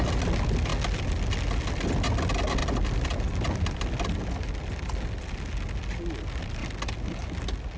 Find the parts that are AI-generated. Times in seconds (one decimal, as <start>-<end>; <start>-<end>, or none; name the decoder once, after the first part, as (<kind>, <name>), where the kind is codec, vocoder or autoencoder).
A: none